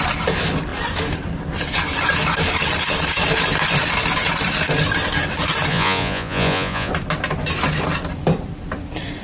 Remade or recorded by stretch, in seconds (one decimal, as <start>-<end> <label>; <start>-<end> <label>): 0.0-5.7 recorded; 5.7-6.9 remade; 6.9-9.2 recorded

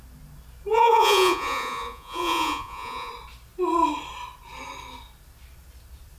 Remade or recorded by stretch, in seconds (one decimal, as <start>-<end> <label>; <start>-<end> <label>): 0.0-0.7 recorded; 0.7-3.1 remade; 3.1-6.2 recorded

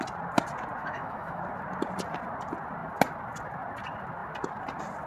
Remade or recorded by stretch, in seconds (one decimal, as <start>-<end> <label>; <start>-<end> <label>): 0.0-0.8 recorded; 0.8-1.4 remade; 1.4-5.1 recorded

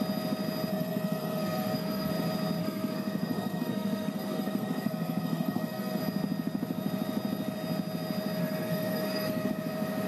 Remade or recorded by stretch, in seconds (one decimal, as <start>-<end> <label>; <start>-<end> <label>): 0.0-0.7 recorded; 0.7-2.1 remade; 2.1-2.6 recorded; 2.6-6.0 remade; 6.0-8.4 recorded; 8.4-9.5 remade; 9.5-10.1 recorded

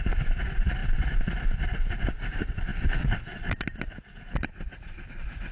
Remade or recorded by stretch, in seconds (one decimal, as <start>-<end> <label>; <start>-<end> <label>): 0.0-5.5 recorded

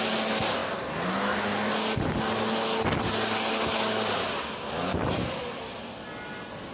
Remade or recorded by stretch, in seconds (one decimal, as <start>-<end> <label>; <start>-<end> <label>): 0.0-6.7 recorded

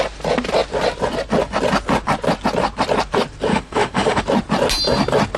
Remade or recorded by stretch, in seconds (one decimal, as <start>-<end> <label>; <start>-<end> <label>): 0.0-3.5 recorded; 3.5-4.2 remade; 4.2-5.4 recorded

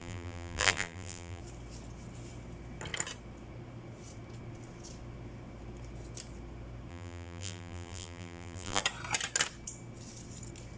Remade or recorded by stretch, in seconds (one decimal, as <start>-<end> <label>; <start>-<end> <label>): 0.0-1.4 remade; 1.4-6.9 recorded; 6.9-8.8 remade; 8.8-10.8 recorded